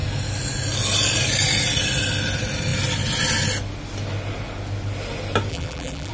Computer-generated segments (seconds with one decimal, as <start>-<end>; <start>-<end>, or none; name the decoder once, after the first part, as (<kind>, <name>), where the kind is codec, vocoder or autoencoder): 5.5-6.1 (vocoder, BigVGAN v2)